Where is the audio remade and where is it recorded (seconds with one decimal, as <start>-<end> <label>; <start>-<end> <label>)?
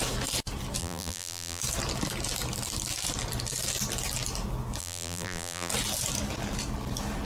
0.0-0.8 recorded; 0.8-1.6 remade; 1.6-4.8 recorded; 4.8-5.7 remade; 5.7-7.3 recorded